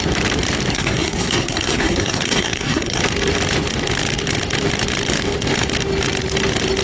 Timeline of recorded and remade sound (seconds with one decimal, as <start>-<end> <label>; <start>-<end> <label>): 0.0-0.7 recorded; 0.7-3.0 remade; 3.0-6.8 recorded